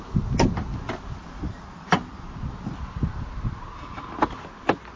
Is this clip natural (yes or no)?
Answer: yes